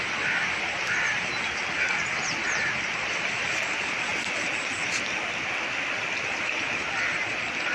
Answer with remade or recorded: recorded